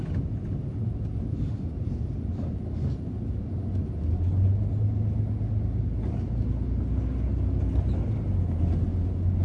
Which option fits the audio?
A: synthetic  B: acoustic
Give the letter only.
B